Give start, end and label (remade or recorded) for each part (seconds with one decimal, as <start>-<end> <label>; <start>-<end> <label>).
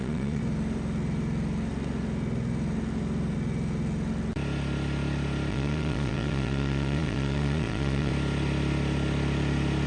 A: 0.0-0.4 remade; 0.4-5.5 recorded; 5.5-8.1 remade; 8.1-9.9 recorded